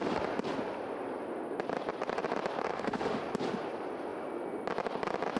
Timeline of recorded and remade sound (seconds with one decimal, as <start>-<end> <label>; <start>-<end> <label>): 0.0-2.7 recorded; 2.7-3.2 remade; 3.2-5.4 recorded